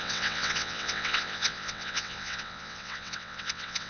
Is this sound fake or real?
fake